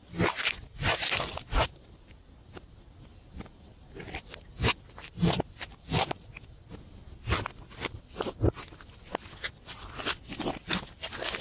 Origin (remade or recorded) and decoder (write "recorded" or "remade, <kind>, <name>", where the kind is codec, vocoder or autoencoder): recorded